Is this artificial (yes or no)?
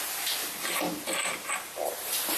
no